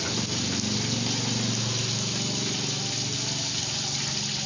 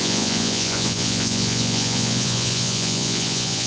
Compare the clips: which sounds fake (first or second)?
second